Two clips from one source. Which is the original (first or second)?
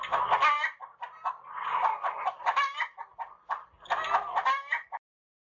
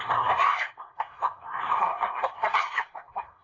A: first